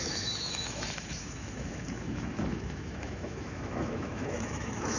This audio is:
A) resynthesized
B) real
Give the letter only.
A